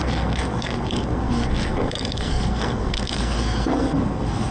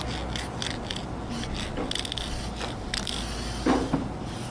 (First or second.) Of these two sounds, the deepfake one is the first